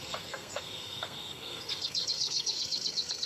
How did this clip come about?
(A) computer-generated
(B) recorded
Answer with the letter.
A